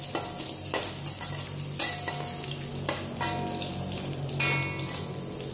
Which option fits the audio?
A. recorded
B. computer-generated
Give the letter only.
A